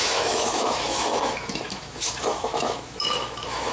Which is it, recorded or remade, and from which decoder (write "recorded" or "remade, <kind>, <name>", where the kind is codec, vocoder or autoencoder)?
remade, autoencoder, DAC-VAE